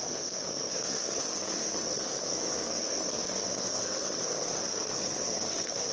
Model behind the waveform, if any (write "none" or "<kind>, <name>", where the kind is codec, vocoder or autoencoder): codec, SNAC